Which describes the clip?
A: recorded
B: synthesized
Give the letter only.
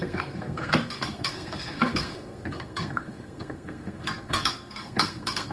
B